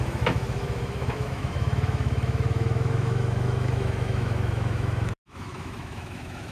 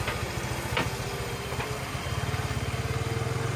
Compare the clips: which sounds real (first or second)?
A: second